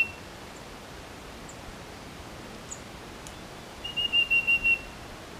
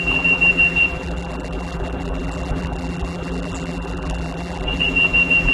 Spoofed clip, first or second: second